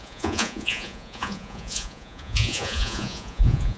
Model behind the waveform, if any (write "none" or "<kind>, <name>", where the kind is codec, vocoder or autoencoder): vocoder, Vocos